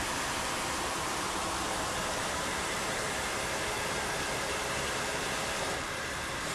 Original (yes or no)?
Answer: no